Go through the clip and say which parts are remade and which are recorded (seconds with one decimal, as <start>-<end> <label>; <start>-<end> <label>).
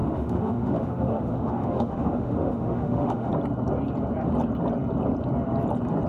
0.0-3.3 remade; 3.3-6.1 recorded